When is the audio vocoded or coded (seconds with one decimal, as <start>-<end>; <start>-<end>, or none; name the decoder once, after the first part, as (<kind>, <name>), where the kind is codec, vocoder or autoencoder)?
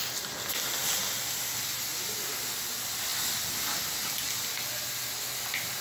none